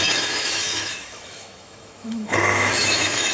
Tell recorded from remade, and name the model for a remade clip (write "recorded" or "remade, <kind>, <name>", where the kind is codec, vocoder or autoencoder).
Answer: remade, autoencoder, DAC-VAE